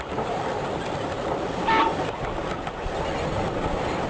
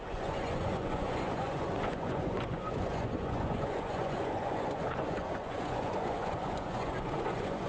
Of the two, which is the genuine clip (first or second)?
first